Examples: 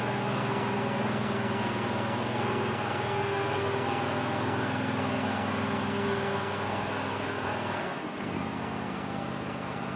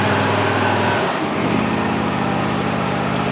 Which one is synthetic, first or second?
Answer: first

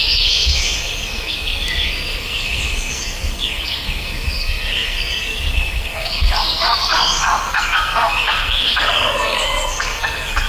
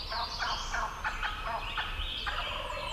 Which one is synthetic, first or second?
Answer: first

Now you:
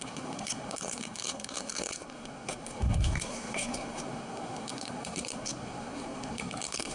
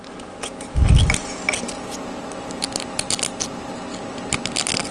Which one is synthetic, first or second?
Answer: first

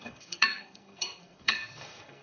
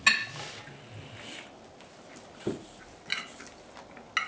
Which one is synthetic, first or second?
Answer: first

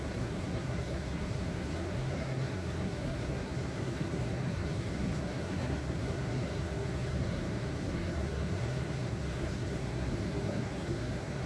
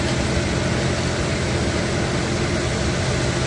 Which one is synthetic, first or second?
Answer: first